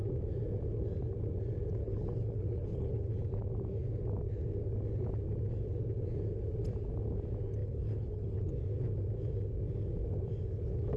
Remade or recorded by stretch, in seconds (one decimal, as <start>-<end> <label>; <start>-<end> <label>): 0.0-1.8 recorded; 1.8-3.0 remade; 3.0-7.6 recorded; 7.6-8.5 remade; 8.5-11.0 recorded